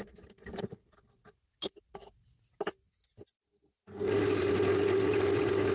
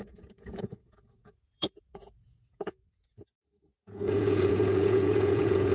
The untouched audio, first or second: first